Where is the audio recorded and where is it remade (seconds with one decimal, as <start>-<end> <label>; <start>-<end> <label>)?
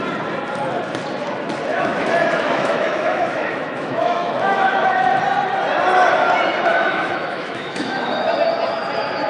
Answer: 0.0-1.7 recorded; 1.7-5.1 remade; 5.1-6.7 recorded; 6.7-8.1 remade; 8.1-9.3 recorded